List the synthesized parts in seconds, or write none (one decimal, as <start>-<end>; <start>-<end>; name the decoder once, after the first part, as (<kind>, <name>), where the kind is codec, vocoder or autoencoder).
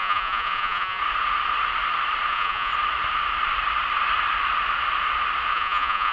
0.0-1.0 (vocoder, Vocos); 2.3-2.7; 5.5-6.1